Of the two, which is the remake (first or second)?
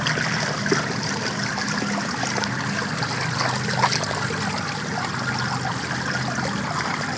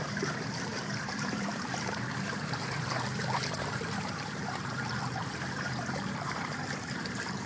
second